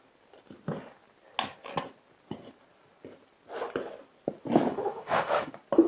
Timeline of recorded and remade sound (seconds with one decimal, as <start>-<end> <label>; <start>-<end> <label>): 0.0-4.7 recorded; 4.7-5.5 remade; 5.5-5.9 recorded